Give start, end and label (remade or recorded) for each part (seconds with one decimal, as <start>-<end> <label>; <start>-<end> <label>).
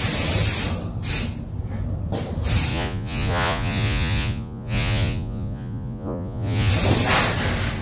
0.0-2.7 recorded; 2.7-6.7 remade; 6.7-7.8 recorded